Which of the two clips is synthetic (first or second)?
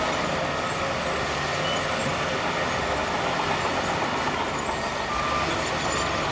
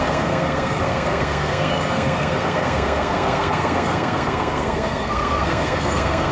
second